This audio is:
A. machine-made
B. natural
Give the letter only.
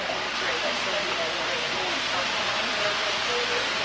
B